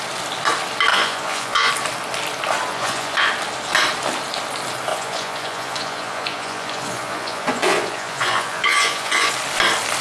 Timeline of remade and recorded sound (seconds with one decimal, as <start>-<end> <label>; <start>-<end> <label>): 0.0-0.9 recorded; 0.9-1.7 remade; 1.7-2.7 recorded; 2.7-3.3 remade; 3.3-4.9 recorded; 4.9-9.3 remade; 9.3-10.0 recorded